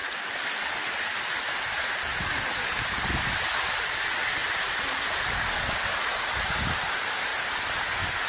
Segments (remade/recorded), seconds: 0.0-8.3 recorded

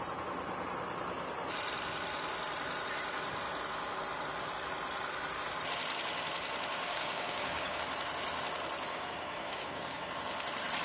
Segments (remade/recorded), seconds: 0.0-6.7 recorded; 6.7-7.8 remade; 7.8-8.9 recorded; 8.9-10.1 remade; 10.1-10.8 recorded

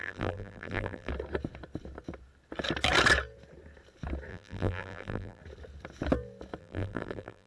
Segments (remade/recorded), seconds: 0.0-1.1 remade; 1.1-4.3 recorded; 4.3-5.4 remade; 5.4-6.6 recorded; 6.6-7.5 remade

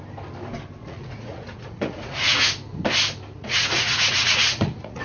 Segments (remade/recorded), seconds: 0.0-0.8 recorded; 0.8-2.5 remade; 2.5-3.4 recorded; 3.4-5.0 remade

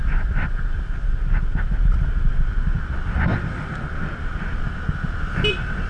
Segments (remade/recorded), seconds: 0.0-5.9 recorded

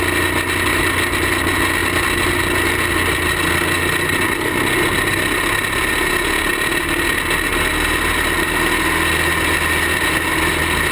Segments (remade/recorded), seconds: 0.0-10.9 recorded

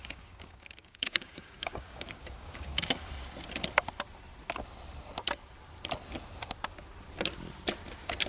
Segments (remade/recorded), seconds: 0.0-3.1 remade; 3.1-8.3 recorded

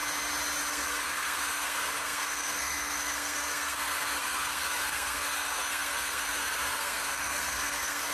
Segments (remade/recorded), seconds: 0.0-0.7 recorded; 0.7-8.1 remade